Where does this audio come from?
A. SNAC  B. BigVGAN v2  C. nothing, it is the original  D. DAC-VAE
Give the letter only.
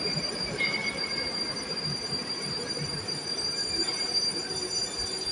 B